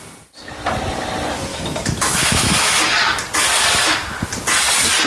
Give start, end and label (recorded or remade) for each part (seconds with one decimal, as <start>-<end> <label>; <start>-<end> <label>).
0.0-1.5 recorded; 1.5-2.8 remade; 2.8-5.1 recorded